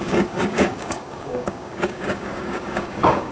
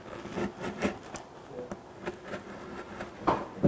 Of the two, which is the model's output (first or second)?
first